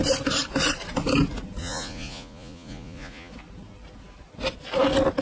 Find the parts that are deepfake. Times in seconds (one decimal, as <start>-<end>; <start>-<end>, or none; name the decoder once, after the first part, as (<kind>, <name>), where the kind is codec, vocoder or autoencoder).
1.6-3.3 (vocoder, Vocos)